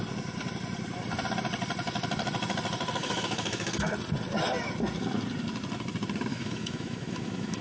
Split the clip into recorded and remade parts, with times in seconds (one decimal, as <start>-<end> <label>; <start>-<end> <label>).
0.0-3.0 recorded; 3.0-3.9 remade; 3.9-6.3 recorded; 6.3-7.6 remade